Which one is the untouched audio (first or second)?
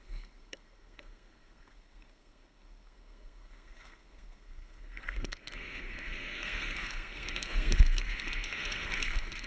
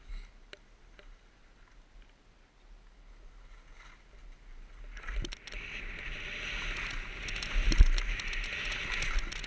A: second